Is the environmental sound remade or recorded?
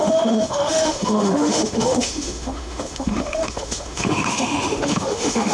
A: remade